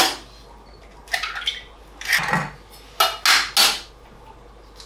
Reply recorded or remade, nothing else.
recorded